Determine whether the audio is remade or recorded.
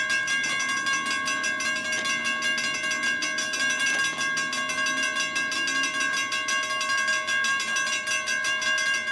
recorded